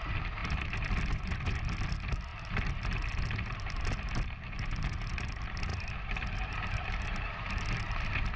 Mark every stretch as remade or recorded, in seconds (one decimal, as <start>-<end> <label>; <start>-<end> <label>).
0.0-8.4 recorded